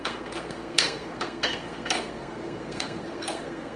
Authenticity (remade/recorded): remade